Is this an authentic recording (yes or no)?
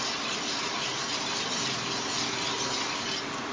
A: no